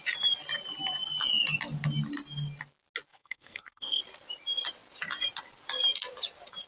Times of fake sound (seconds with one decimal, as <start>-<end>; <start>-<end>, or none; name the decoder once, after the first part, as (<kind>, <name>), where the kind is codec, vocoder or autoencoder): 3.1-4.0 (codec, SNAC)